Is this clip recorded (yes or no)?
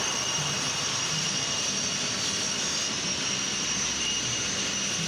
yes